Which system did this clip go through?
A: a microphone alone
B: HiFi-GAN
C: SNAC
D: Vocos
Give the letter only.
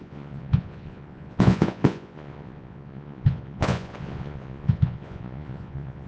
D